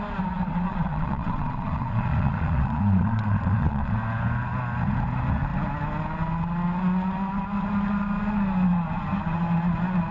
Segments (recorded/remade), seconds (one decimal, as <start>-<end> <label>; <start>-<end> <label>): 0.0-0.5 recorded; 0.5-3.9 remade; 3.9-10.1 recorded